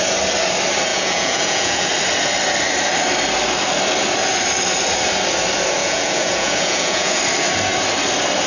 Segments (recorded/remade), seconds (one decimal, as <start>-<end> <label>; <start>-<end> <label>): 0.0-0.9 recorded; 0.9-1.9 remade; 1.9-5.8 recorded; 5.8-7.2 remade; 7.2-8.5 recorded